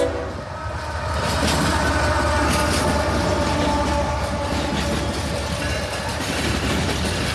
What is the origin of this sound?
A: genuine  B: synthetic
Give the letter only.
A